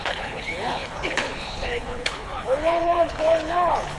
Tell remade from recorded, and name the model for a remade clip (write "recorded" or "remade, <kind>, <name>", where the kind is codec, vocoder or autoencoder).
remade, codec, HILCodec